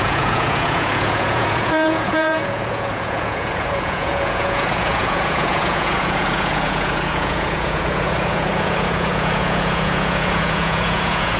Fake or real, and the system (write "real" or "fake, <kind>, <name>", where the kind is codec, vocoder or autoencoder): fake, vocoder, Vocos